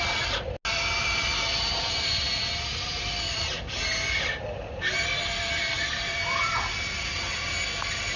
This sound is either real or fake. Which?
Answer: real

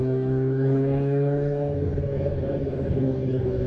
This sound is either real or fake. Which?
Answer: fake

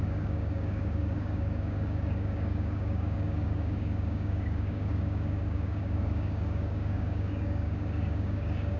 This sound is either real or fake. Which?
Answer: fake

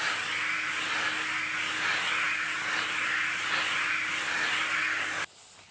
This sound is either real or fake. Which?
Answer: real